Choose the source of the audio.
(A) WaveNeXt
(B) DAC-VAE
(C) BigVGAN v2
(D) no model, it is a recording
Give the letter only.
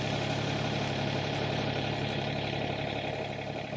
C